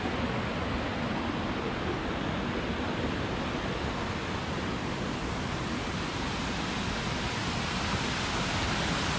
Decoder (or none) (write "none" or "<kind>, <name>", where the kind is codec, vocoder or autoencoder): none